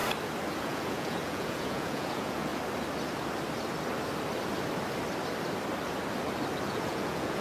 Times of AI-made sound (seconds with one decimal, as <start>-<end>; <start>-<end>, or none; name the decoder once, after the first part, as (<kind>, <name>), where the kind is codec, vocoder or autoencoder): 0.6-2.5 (vocoder, Vocos); 6.7-7.4